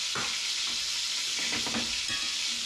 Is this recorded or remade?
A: recorded